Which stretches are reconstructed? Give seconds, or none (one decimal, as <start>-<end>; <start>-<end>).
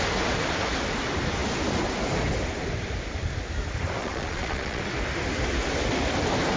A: 4.0-4.8